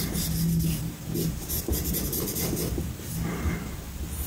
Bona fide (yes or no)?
yes